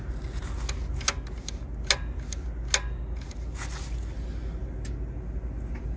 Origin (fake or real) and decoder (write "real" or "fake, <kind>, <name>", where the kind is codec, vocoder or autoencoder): real